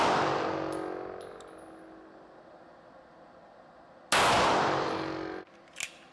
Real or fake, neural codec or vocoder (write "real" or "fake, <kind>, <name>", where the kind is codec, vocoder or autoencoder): real